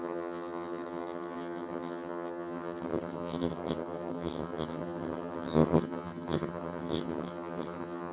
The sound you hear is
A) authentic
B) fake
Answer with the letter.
B